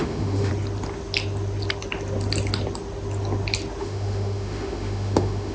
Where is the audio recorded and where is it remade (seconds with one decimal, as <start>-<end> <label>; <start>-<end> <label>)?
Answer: 0.0-0.5 remade; 0.5-3.8 recorded; 3.8-5.5 remade